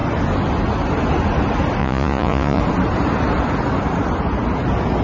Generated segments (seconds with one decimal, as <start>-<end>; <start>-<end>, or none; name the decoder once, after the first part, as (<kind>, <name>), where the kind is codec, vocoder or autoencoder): 1.8-2.6 (vocoder, Vocos)

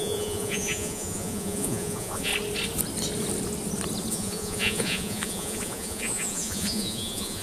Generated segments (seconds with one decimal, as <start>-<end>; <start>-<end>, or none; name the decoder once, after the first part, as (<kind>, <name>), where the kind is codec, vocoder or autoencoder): 0.0-2.3 (vocoder, Vocos); 4.1-7.4

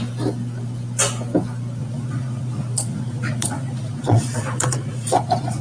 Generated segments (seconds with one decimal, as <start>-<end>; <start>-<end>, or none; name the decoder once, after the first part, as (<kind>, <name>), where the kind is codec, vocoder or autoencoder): 1.8-5.6 (vocoder, Vocos)

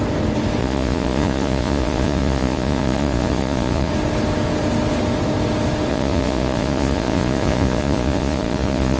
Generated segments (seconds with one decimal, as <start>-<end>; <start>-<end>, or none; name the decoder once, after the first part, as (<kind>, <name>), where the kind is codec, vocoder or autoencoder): 0.6-3.9 (vocoder, Vocos); 5.9-9.0

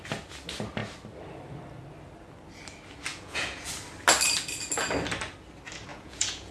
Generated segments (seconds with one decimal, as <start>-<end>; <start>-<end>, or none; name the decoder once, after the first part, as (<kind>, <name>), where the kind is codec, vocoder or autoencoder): 3.1-3.7 (vocoder, Vocos); 5.9-6.5

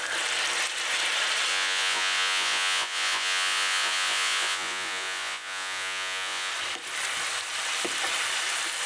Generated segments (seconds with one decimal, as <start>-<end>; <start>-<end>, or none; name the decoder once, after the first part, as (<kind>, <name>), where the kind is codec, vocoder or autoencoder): 1.5-6.5 (vocoder, Vocos)